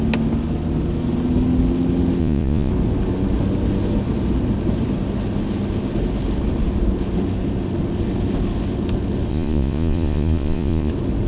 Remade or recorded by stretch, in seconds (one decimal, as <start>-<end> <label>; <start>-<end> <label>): 0.0-2.2 recorded; 2.2-2.7 remade; 2.7-9.3 recorded; 9.3-10.9 remade; 10.9-11.3 recorded